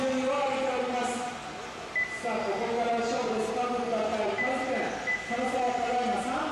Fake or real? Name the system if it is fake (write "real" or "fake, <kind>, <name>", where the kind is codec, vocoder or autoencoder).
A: real